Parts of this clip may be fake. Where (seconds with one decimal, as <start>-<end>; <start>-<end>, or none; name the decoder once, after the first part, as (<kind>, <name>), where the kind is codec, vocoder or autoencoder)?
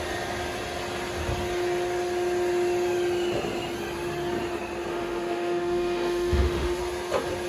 4.9-6.8 (autoencoder, DAC-VAE)